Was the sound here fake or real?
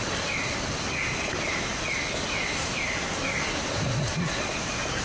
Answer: real